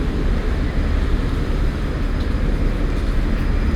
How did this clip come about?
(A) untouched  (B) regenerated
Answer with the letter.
A